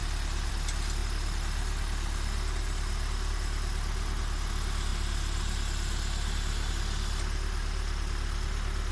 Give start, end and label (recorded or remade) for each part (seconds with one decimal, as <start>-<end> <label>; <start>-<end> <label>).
0.0-8.9 recorded